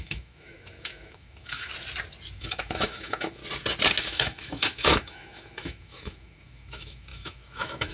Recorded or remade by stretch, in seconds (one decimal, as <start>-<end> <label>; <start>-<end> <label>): 0.0-1.7 remade; 1.7-2.4 recorded; 2.4-3.4 remade; 3.4-4.0 recorded; 4.0-7.9 remade